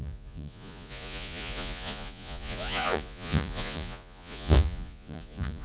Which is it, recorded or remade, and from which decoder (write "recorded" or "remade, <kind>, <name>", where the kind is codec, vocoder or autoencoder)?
remade, vocoder, Vocos